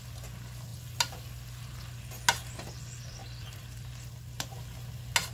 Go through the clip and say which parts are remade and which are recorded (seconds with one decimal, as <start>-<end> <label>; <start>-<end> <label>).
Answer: 0.0-3.2 recorded; 3.2-3.9 remade; 3.9-5.3 recorded